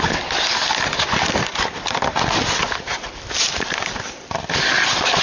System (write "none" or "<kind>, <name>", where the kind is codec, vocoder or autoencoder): none